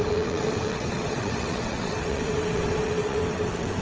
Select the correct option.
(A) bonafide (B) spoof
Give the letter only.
B